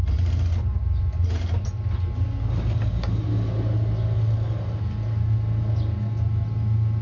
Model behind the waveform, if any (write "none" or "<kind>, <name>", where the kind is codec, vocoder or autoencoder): none